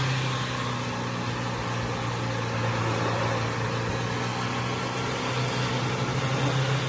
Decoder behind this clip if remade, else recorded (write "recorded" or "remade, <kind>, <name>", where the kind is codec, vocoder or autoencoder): recorded